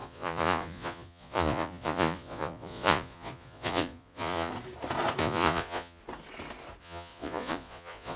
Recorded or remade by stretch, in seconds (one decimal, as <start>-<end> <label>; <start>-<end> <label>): 0.0-4.5 remade; 4.5-5.2 recorded; 5.2-6.0 remade; 6.0-6.8 recorded; 6.8-8.2 remade